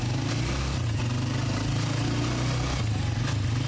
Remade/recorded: recorded